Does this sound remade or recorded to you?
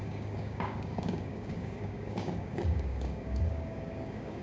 remade